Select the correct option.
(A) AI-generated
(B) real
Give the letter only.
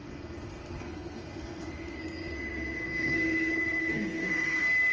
A